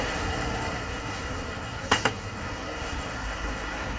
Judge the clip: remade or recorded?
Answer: remade